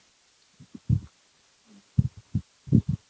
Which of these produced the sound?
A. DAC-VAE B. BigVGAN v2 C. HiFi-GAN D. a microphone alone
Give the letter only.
D